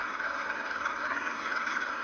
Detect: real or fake fake